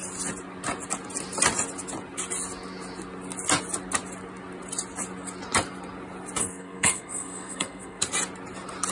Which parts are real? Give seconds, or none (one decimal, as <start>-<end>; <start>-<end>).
0.0-6.4; 8.0-8.9